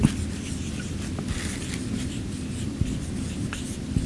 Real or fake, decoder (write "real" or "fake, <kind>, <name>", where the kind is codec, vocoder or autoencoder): real